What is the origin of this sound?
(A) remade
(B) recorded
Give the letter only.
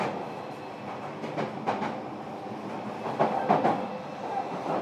B